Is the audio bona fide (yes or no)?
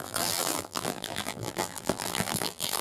no